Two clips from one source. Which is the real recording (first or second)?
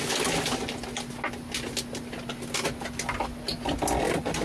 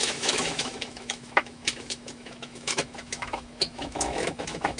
first